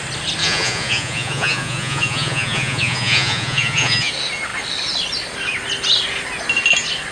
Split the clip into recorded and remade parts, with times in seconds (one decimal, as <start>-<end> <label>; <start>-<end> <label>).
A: 0.0-0.4 recorded; 0.4-4.1 remade; 4.1-7.1 recorded